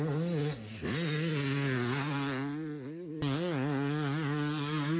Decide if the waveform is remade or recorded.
recorded